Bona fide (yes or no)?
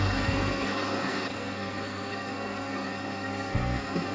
no